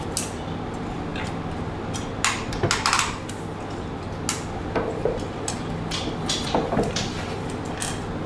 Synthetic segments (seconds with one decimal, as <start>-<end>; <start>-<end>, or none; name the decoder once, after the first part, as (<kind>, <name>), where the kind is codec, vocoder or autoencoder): none